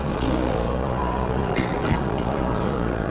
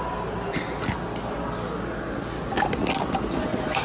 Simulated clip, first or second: first